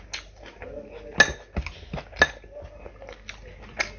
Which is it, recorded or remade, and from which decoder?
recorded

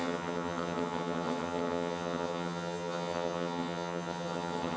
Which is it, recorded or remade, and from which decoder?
remade, vocoder, HiFi-GAN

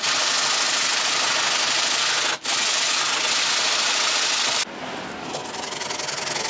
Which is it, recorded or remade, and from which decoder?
recorded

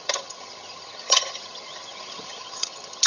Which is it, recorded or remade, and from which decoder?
remade, vocoder, HiFi-GAN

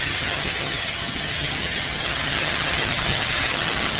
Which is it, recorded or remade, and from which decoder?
remade, vocoder, HiFi-GAN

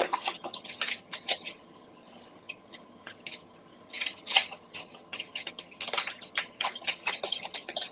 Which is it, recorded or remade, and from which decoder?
remade, vocoder, HiFi-GAN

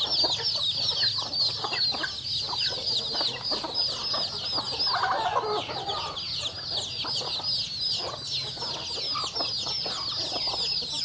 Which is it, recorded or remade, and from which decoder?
recorded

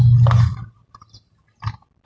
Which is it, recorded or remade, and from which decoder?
recorded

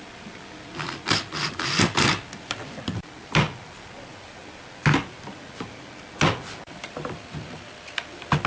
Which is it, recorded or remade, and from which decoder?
recorded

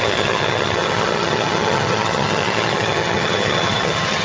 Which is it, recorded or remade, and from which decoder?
remade, vocoder, HiFi-GAN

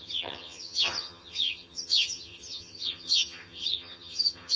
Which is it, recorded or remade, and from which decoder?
remade, vocoder, HiFi-GAN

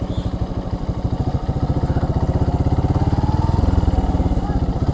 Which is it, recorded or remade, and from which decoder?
recorded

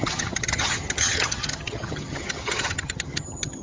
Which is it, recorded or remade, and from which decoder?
remade, vocoder, HiFi-GAN